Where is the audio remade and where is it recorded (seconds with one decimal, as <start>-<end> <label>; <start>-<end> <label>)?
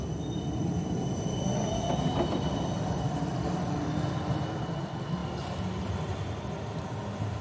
0.0-7.4 recorded